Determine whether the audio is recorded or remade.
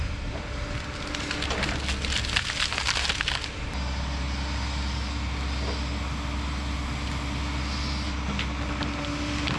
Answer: recorded